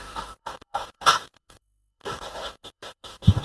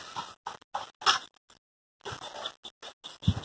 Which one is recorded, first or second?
second